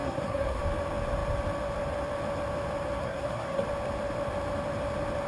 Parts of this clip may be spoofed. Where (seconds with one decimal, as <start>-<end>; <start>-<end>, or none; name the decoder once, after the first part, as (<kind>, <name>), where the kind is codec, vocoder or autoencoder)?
0.0-0.6 (codec, SNAC); 3.0-3.6